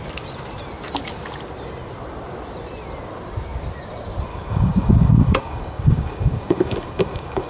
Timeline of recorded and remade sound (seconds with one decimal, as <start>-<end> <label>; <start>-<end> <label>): 0.0-4.3 recorded; 4.3-7.5 remade